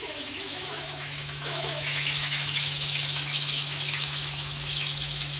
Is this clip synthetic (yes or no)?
yes